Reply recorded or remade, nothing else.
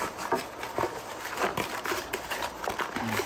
recorded